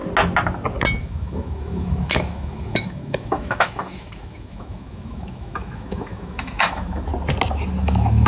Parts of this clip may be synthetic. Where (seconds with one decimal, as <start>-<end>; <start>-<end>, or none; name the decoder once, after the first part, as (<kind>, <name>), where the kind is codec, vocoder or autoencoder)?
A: 1.0-7.1 (autoencoder, DAC-VAE); 7.8-8.3

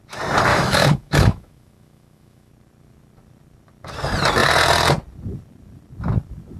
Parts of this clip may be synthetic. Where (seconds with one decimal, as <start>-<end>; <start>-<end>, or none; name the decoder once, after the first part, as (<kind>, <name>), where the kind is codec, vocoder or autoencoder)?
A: 0.5-2.5 (autoencoder, DAC-VAE)